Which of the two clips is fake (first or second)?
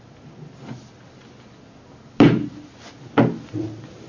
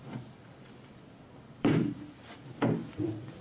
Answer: second